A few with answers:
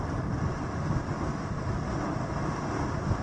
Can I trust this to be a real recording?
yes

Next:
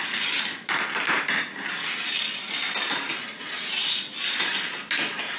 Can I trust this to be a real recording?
yes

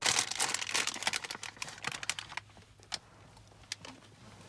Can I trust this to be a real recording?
yes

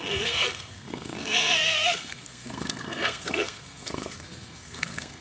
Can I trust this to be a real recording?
no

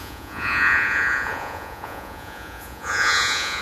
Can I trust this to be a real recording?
no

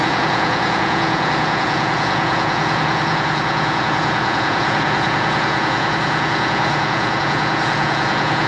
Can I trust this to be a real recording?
no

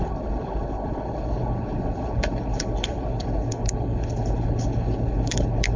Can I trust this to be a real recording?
no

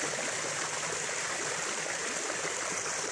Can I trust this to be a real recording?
yes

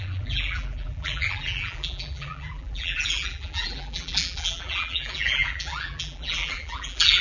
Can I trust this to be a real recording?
no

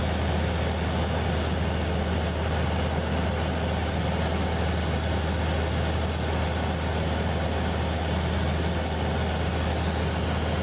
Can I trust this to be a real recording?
yes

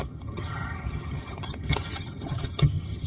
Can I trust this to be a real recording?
no